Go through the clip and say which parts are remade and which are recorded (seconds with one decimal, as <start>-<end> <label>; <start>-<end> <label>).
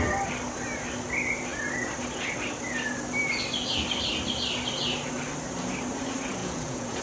0.0-6.4 recorded; 6.4-7.0 remade